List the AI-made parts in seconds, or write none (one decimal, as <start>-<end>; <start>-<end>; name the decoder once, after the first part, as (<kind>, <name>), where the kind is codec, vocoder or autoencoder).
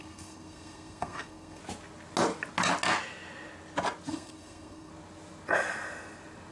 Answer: 0.0-1.6 (codec, SNAC); 4.1-4.9